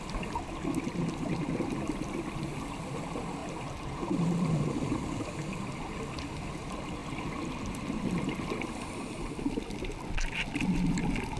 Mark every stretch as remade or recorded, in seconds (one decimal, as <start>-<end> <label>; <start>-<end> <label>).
0.0-11.4 recorded